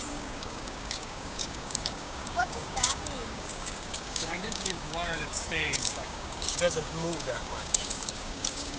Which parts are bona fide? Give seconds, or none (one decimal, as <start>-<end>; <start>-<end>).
none